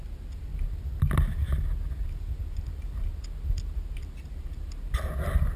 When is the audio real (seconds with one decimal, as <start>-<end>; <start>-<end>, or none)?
0.0-5.6